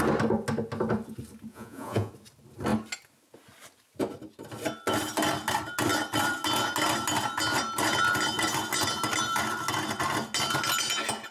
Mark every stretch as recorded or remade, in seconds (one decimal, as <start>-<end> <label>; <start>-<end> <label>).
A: 0.0-1.5 recorded; 1.5-2.1 remade; 2.1-11.3 recorded